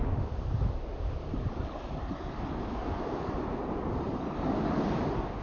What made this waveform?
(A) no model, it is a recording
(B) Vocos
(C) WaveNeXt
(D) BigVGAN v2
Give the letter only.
A